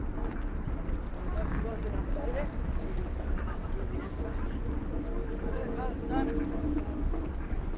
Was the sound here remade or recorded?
recorded